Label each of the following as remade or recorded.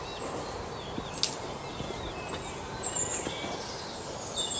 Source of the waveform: recorded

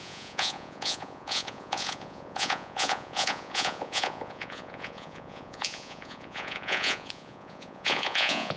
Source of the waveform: remade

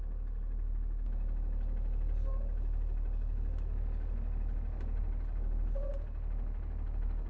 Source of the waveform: recorded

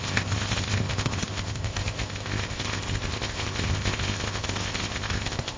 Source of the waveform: remade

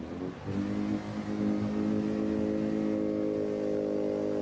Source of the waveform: recorded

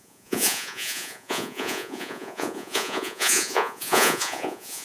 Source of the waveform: remade